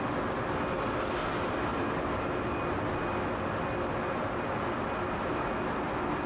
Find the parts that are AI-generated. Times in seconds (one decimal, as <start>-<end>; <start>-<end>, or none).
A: none